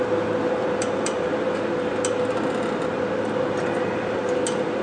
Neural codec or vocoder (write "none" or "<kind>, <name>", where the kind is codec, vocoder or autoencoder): none